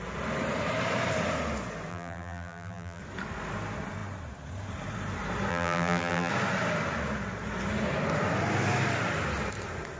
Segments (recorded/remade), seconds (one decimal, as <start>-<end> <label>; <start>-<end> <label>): 0.0-1.9 recorded; 1.9-3.0 remade; 3.0-5.5 recorded; 5.5-6.3 remade; 6.3-10.0 recorded